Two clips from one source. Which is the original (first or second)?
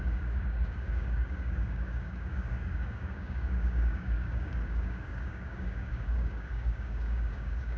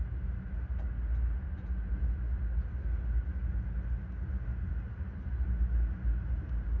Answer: second